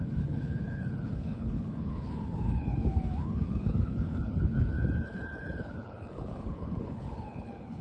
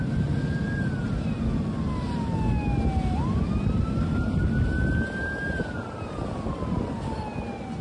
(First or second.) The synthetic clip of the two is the first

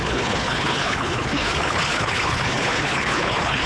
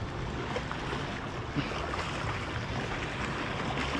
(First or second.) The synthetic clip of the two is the first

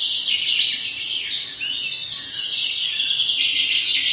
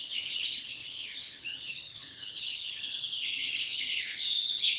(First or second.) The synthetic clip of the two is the second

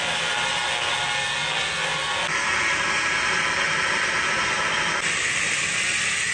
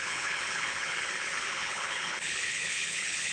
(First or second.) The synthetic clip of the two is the second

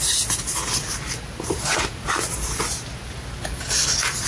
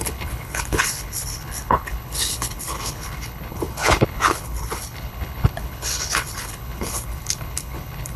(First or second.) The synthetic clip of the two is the second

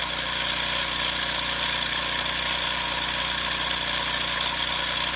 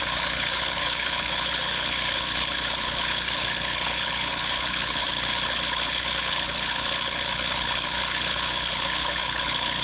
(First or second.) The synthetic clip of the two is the second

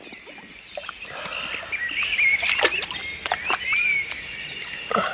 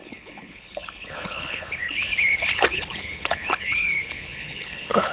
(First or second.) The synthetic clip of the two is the second